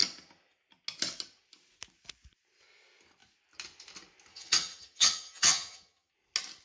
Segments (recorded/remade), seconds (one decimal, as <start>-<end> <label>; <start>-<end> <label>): 0.0-4.3 recorded; 4.3-6.1 remade; 6.1-6.6 recorded